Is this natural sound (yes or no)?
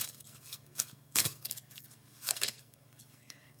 no